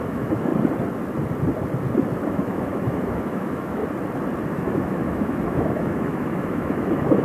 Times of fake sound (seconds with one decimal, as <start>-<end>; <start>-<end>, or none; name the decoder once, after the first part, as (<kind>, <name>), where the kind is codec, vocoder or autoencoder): 0.0-0.5 (autoencoder, DAC-VAE); 2.3-3.8; 4.5-7.2